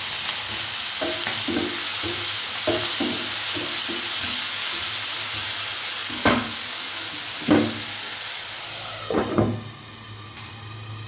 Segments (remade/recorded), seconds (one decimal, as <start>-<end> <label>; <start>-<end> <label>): 0.0-4.2 recorded; 4.2-4.8 remade; 4.8-6.0 recorded; 6.0-7.1 remade; 7.1-11.1 recorded